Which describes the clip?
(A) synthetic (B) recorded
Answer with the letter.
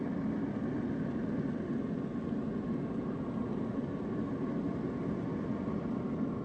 B